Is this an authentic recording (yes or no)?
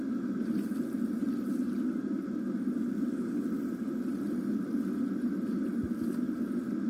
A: yes